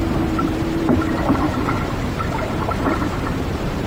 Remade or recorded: remade